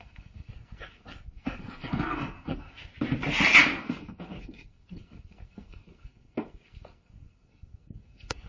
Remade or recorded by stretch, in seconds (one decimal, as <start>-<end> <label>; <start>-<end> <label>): 0.0-2.9 remade; 2.9-3.8 recorded; 3.8-8.5 remade